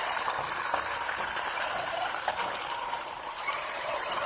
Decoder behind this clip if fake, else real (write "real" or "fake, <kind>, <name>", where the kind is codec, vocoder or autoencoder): fake, vocoder, BigVGAN v2